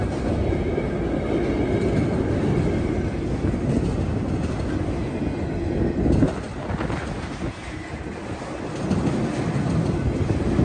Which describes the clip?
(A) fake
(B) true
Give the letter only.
B